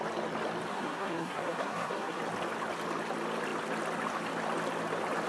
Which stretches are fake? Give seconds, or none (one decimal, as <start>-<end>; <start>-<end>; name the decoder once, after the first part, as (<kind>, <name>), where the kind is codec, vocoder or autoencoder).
0.7-2.2 (codec, SNAC)

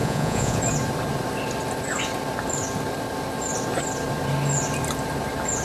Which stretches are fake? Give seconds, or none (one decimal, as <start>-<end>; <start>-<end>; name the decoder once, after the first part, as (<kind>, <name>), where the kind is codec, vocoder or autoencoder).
0.0-0.6 (vocoder, Vocos)

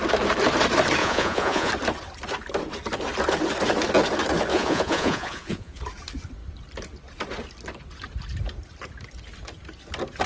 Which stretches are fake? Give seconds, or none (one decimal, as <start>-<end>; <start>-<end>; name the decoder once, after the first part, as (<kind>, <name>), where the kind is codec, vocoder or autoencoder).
1.0-1.7 (vocoder, Vocos); 4.5-5.8